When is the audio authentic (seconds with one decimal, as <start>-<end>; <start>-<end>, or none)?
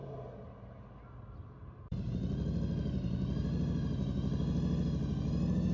0.0-5.7